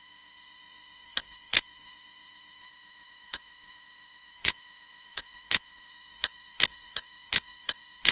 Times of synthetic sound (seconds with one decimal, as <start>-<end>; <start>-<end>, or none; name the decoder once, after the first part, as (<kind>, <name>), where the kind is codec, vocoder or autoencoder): 0.0-8.1 (autoencoder, DAC-VAE)